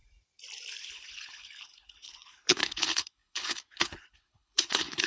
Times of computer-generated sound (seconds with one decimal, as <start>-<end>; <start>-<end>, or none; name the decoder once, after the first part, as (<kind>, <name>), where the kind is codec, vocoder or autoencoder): 0.8-5.1 (codec, HILCodec)